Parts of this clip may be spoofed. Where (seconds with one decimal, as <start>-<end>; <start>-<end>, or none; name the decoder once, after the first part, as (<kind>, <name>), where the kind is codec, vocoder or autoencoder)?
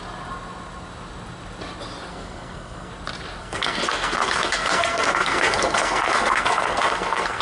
2.1-2.9 (codec, SNAC); 3.4-7.4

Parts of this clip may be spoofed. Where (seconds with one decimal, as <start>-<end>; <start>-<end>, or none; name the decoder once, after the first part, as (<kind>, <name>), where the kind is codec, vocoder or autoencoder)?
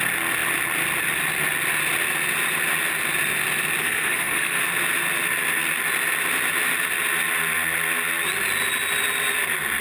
3.8-4.6 (codec, SNAC)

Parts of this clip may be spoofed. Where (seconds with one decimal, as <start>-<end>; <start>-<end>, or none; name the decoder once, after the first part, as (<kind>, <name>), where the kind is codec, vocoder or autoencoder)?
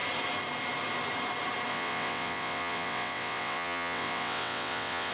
1.7-5.1 (vocoder, WaveNeXt)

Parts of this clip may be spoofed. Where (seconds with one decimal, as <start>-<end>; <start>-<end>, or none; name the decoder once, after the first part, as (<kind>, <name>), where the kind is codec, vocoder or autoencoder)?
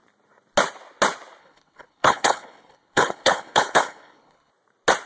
1.4-4.5 (codec, HILCodec)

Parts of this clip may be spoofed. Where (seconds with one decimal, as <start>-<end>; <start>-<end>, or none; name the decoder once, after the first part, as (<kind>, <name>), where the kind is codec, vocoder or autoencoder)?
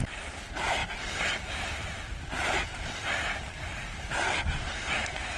0.8-1.3 (vocoder, BigVGAN v2)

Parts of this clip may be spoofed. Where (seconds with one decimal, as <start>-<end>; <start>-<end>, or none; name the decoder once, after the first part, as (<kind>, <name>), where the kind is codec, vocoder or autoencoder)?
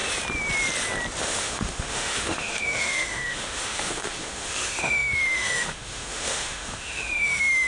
1.2-7.7 (autoencoder, DAC-VAE)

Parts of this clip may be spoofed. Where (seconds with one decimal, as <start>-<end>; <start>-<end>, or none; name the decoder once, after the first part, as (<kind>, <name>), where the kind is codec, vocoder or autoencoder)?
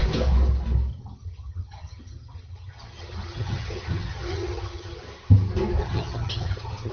0.9-5.0 (vocoder, HiFi-GAN); 5.8-6.9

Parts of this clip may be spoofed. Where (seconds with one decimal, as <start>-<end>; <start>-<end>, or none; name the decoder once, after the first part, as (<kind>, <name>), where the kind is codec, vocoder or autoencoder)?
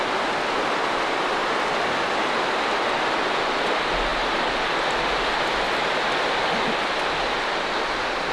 none